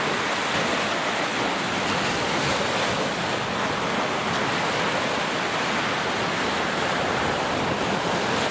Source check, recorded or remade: recorded